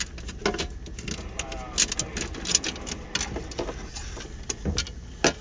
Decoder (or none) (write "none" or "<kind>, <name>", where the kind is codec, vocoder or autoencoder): none